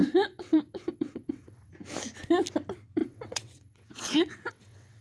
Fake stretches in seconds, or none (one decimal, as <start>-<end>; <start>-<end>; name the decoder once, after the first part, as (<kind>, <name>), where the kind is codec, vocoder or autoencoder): 0.0-1.7 (vocoder, WaveNeXt); 3.0-5.0